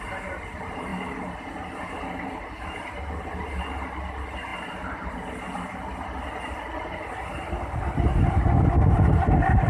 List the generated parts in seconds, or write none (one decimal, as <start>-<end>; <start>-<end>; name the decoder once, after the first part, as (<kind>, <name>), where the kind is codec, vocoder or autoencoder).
none